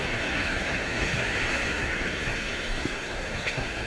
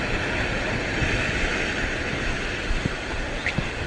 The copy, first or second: first